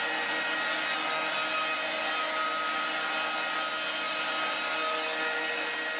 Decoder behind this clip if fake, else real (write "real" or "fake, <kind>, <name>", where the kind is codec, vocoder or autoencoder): real